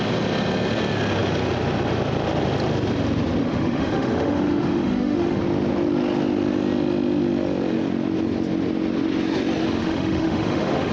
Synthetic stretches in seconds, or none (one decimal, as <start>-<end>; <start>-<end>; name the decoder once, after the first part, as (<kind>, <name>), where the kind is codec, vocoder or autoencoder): 3.4-5.4 (autoencoder, DAC-VAE); 9.8-10.9